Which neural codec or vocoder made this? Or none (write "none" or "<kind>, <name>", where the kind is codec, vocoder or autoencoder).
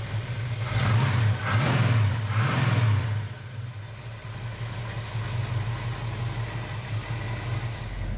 none